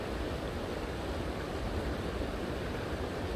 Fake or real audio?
real